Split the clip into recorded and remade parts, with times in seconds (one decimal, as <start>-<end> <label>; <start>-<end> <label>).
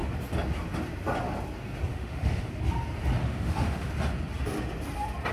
0.0-1.9 recorded; 1.9-2.5 remade; 2.5-3.2 recorded; 3.2-3.9 remade; 3.9-5.3 recorded